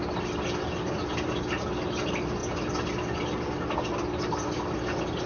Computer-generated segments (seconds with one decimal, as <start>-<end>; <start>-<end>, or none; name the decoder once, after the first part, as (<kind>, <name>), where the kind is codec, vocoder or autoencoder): none